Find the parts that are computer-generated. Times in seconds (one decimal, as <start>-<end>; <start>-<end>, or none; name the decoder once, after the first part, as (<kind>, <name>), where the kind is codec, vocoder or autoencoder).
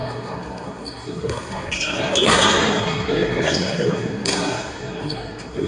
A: 0.0-5.7 (codec, SNAC)